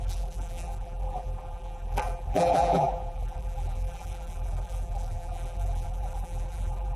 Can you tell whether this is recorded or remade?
remade